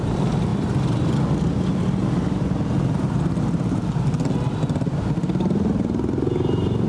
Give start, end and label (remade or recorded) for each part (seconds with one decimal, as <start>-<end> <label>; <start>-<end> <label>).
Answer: 0.0-6.9 recorded